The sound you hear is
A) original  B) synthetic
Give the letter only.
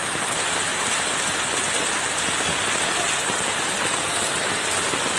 A